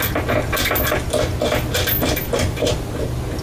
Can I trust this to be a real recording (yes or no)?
yes